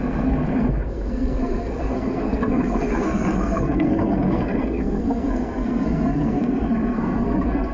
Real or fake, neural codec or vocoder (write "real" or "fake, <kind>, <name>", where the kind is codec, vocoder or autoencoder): fake, codec, SNAC